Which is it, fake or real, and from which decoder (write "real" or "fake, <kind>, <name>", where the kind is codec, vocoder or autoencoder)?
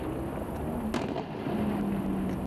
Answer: real